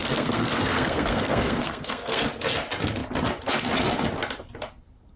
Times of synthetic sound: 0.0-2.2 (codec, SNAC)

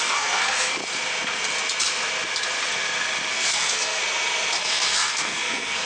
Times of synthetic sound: 0.0-0.8 (codec, SNAC); 3.3-4.0; 4.6-5.9

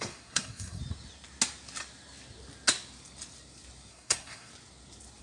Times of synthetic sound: 0.0-0.8 (codec, SNAC); 3.9-4.5

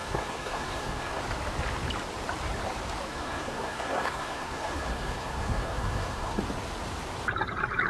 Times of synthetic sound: 0.0-1.2 (codec, SNAC); 3.1-6.4

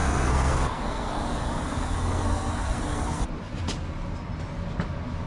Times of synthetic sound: 0.0-3.2 (codec, SNAC)

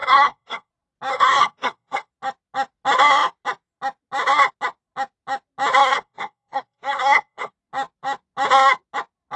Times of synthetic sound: 0.0-0.7 (codec, SNAC); 1.1-2.1; 5.8-7.5